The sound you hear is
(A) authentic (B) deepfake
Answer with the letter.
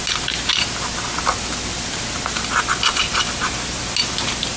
A